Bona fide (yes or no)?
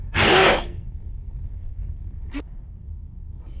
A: no